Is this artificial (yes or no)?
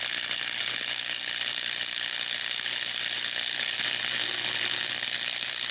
no